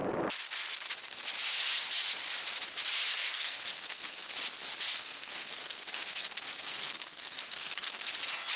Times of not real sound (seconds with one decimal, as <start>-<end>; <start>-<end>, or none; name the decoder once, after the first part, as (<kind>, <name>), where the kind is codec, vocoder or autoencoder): 3.1-4.3 (codec, SNAC); 4.9-8.1